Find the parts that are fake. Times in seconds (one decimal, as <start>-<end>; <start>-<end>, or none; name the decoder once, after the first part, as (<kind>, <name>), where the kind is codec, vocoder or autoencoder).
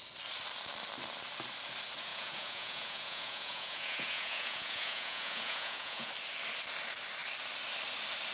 2.1-6.1 (vocoder, Vocos)